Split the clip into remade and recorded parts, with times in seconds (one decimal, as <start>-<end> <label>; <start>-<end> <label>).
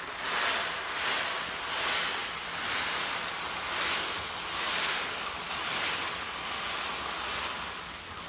0.0-8.3 recorded